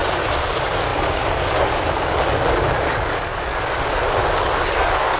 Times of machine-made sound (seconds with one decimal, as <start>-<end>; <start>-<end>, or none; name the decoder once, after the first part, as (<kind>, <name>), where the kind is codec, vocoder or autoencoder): 0.0-5.2 (codec, DAC)